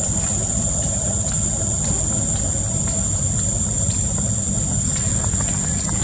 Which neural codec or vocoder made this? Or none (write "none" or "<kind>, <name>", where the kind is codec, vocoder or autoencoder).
none